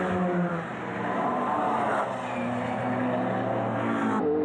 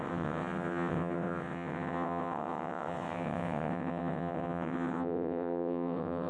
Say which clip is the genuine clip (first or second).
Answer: first